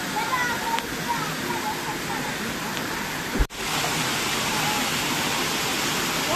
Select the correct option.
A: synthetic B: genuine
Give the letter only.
B